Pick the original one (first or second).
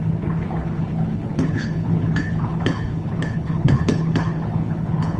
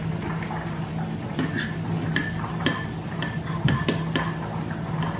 second